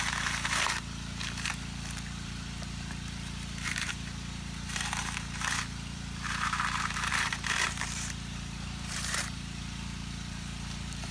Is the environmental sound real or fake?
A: fake